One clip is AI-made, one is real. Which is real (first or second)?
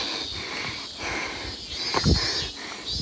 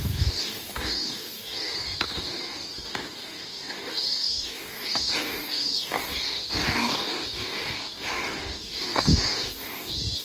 first